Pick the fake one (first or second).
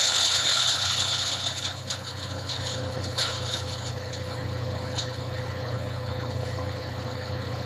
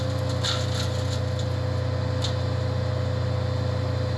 first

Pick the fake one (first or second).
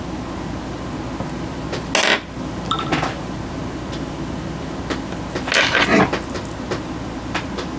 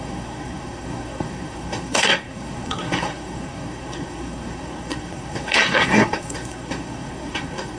second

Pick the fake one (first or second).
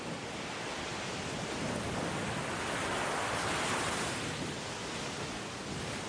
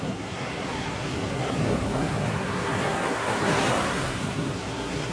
second